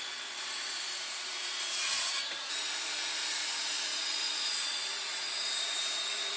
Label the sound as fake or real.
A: fake